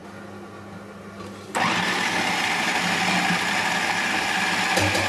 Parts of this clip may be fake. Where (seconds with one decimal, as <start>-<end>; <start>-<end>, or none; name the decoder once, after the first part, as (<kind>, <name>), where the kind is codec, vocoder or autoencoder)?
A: none